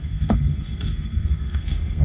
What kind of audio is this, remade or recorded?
remade